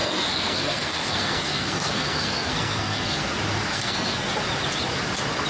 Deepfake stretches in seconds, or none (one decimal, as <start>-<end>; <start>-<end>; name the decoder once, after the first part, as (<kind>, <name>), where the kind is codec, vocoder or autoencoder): 0.0-3.3 (codec, SNAC); 3.7-4.3